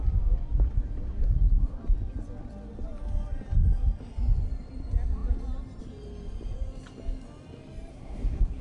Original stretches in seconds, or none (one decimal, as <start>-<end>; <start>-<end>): 0.0-1.2; 1.8-7.9